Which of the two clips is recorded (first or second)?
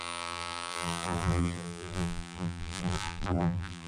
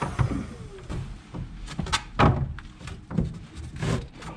second